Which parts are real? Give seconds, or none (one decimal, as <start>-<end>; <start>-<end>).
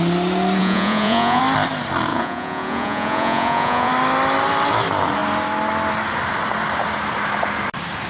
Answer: 0.0-0.6; 1.4-2.1; 3.9-8.1